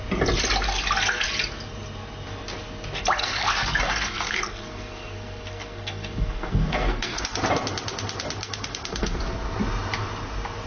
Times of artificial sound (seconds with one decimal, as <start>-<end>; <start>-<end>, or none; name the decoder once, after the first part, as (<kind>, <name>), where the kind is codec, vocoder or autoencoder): 3.2-7.2 (codec, SNAC); 8.4-9.2